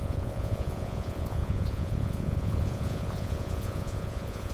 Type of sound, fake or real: fake